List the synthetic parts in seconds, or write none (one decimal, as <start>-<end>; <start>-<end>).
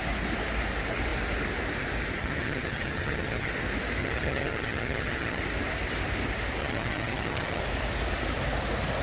2.2-3.5; 4.0-5.4; 6.6-7.6